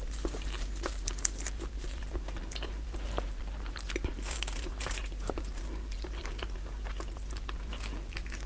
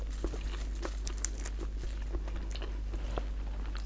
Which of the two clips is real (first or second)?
second